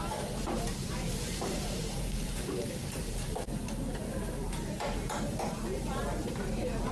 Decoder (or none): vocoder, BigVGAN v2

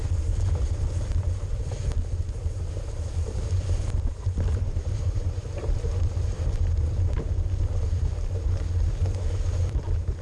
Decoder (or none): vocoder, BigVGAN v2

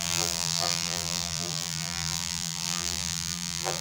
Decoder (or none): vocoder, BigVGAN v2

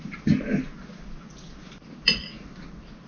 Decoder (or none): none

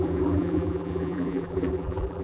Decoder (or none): vocoder, BigVGAN v2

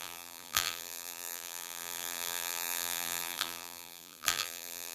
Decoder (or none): vocoder, BigVGAN v2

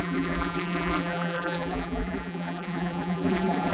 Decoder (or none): vocoder, BigVGAN v2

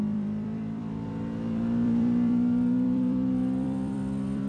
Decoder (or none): vocoder, BigVGAN v2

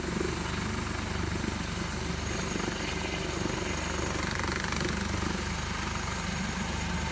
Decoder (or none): none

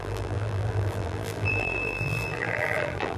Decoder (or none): vocoder, BigVGAN v2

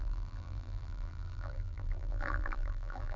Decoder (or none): vocoder, BigVGAN v2